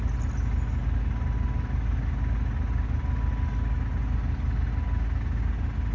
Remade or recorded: recorded